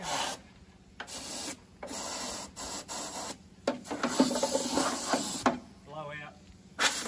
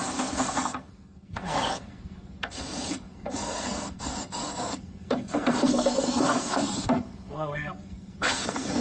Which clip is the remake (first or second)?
second